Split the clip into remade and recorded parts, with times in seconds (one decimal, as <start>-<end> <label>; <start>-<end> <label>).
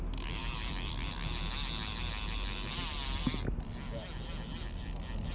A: 0.0-0.4 recorded; 0.4-1.1 remade; 1.1-5.3 recorded